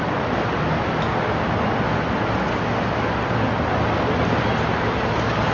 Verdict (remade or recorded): recorded